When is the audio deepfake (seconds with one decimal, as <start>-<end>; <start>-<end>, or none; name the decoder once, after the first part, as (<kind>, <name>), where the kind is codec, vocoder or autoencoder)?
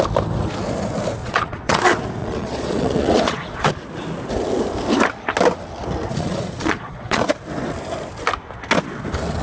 1.2-1.8 (vocoder, Vocos); 2.2-3.7; 6.1-7.2